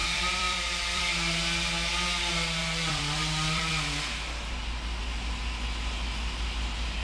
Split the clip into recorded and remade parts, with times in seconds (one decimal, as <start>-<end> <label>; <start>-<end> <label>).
0.0-1.0 remade; 1.0-2.6 recorded; 2.6-3.7 remade; 3.7-7.0 recorded